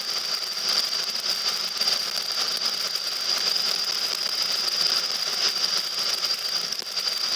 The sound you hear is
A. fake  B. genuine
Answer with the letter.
B